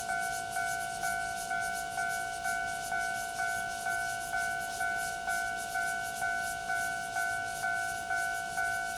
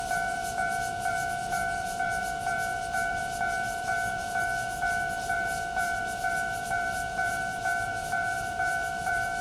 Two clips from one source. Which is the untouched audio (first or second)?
first